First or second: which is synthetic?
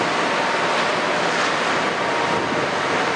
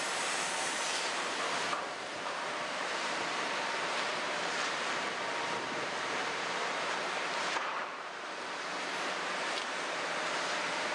second